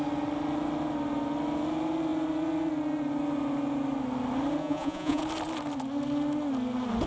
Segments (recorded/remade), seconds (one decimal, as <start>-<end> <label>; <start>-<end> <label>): 0.0-4.6 recorded; 4.6-5.2 remade; 5.2-7.1 recorded